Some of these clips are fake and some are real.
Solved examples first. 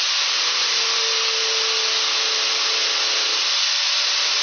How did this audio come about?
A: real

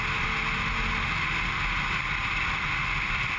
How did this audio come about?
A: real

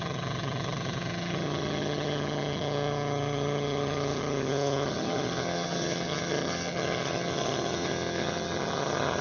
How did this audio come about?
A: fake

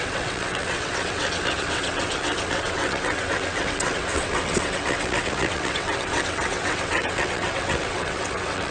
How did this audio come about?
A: fake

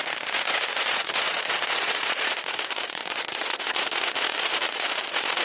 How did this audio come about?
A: fake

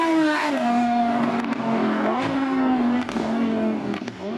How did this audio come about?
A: fake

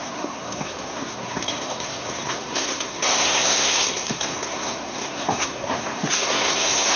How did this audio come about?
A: fake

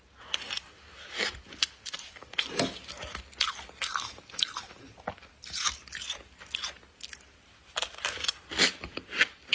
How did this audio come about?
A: real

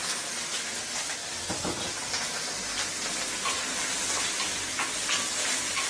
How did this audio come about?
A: real